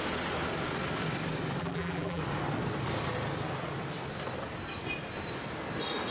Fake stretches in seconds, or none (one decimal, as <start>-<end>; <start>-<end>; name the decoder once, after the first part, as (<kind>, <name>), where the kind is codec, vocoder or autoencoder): 1.6-2.2 (vocoder, BigVGAN v2)